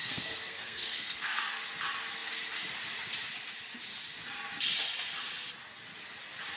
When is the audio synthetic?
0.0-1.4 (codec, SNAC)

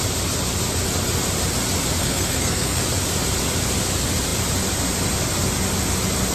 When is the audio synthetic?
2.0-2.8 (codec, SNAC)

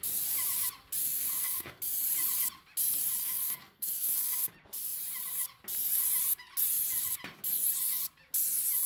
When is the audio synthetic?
1.0-1.8 (codec, SNAC); 3.2-4.5

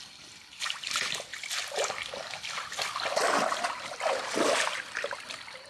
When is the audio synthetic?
none